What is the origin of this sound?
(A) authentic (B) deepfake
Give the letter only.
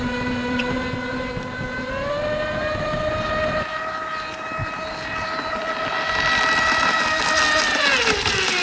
A